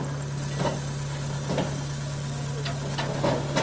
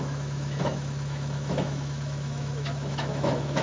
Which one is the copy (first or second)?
second